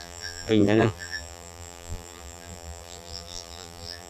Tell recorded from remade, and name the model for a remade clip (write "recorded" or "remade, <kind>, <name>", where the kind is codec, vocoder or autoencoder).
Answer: remade, vocoder, BigVGAN v2